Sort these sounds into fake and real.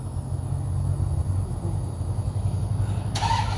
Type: real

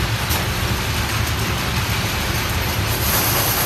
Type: real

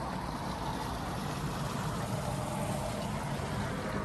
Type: real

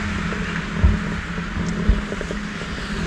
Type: real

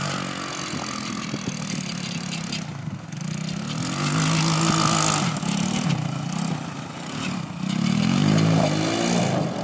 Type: real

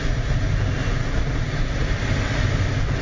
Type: real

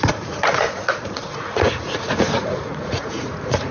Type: fake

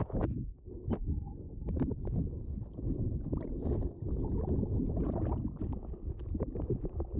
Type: real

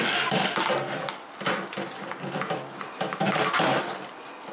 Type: real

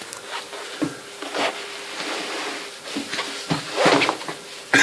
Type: real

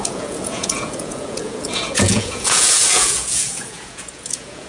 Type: fake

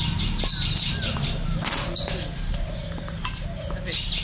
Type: real